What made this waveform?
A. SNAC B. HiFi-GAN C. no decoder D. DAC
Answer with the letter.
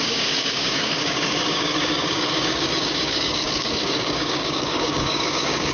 D